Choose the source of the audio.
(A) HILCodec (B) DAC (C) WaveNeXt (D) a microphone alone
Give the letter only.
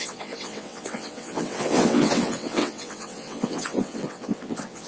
C